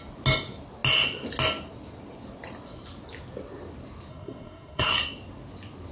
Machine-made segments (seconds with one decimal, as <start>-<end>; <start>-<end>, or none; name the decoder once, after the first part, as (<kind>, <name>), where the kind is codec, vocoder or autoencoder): 4.1-4.9 (codec, SNAC)

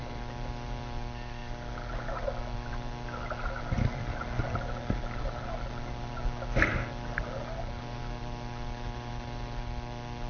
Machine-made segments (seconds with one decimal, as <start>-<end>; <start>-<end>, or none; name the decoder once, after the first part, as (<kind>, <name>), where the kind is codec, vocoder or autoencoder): none

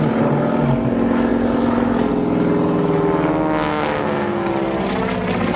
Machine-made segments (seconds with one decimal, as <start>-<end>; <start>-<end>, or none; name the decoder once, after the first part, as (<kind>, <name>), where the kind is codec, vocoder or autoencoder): 3.7-4.5 (codec, SNAC)

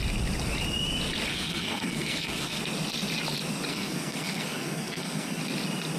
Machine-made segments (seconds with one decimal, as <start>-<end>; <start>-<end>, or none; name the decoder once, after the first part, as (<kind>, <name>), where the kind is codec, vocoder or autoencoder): 1.3-2.6 (codec, SNAC); 3.7-5.4